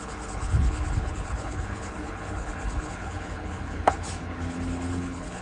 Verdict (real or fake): fake